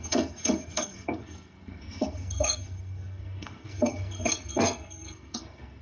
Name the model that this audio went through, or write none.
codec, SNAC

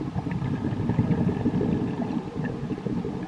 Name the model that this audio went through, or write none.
none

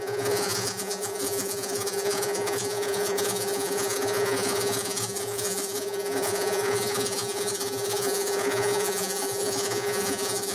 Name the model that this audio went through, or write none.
vocoder, Vocos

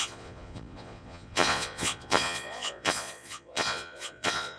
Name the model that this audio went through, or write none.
vocoder, Vocos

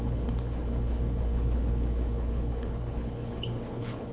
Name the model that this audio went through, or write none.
codec, HILCodec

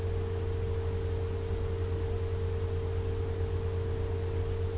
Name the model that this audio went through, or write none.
none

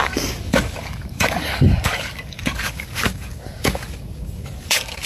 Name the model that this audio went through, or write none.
codec, DAC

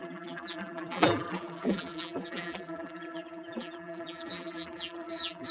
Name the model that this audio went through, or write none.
vocoder, BigVGAN v2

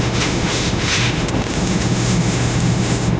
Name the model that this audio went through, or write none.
autoencoder, DAC-VAE